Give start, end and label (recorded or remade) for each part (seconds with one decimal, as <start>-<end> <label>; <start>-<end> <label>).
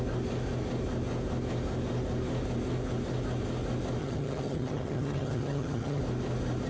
0.0-4.0 recorded; 4.0-6.0 remade; 6.0-6.7 recorded